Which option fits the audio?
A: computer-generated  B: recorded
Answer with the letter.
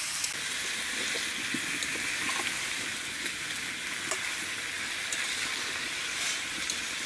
B